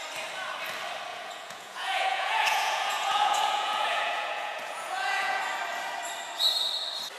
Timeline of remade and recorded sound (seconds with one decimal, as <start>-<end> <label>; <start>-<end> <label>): 0.0-1.1 recorded; 1.1-5.4 remade; 5.4-7.2 recorded